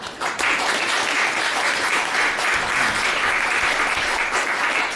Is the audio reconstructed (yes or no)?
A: no